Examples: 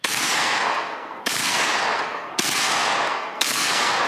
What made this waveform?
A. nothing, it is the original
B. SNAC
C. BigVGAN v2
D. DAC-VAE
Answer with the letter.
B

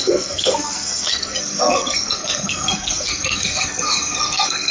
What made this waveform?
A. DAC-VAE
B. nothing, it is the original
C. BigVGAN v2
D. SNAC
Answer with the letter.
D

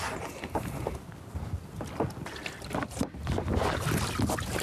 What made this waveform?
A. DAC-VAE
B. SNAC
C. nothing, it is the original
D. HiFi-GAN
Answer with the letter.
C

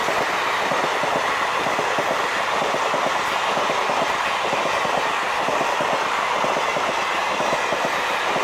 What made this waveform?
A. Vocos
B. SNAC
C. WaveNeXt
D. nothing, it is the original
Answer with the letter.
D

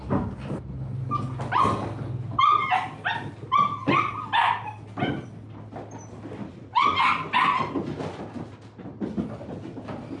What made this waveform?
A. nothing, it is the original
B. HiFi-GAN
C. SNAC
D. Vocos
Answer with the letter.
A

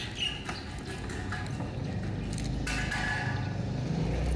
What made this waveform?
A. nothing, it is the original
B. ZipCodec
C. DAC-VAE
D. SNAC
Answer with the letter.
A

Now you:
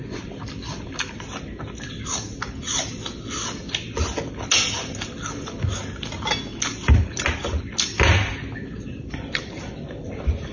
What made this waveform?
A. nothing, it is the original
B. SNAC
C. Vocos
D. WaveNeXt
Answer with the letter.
A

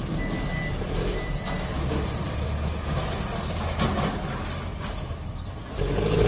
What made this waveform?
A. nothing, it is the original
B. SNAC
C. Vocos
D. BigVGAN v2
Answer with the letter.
A